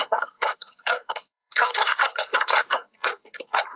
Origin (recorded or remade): remade